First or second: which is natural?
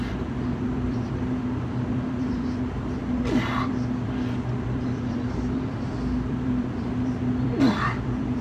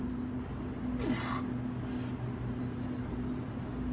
second